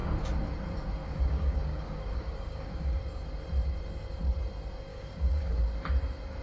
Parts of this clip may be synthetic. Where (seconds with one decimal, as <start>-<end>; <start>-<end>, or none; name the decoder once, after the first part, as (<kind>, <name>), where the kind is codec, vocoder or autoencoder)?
1.0-3.0 (codec, DAC); 4.9-5.6